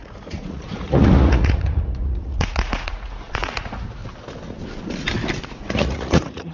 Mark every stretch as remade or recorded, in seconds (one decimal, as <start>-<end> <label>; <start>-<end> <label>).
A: 0.0-4.0 remade; 4.0-5.4 recorded; 5.4-6.5 remade